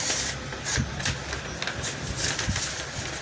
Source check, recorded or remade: recorded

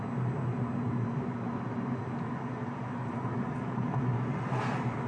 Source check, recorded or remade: recorded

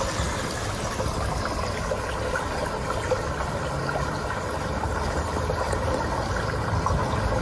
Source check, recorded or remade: recorded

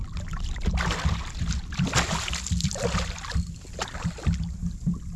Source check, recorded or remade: recorded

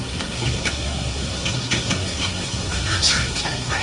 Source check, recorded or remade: remade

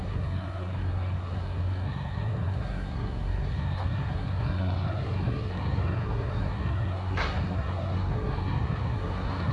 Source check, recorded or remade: remade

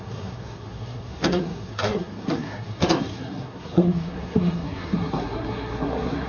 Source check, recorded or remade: remade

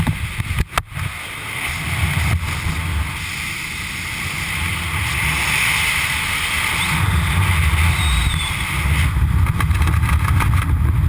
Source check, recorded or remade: recorded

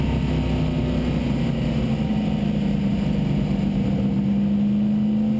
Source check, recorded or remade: recorded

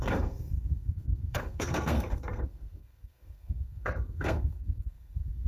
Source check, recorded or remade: remade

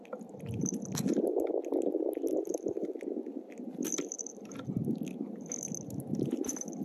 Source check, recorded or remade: recorded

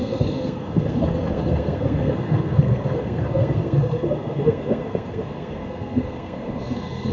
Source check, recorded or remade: remade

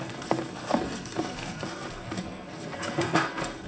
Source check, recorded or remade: remade